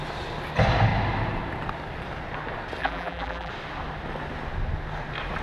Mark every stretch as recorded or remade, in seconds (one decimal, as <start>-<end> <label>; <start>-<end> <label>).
0.0-2.8 recorded; 2.8-3.5 remade; 3.5-5.4 recorded